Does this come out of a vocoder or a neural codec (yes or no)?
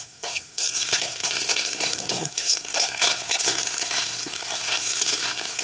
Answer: yes